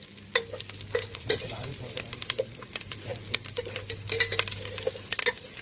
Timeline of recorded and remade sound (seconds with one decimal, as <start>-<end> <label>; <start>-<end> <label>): 0.0-1.1 recorded; 1.1-1.8 remade; 1.8-5.6 recorded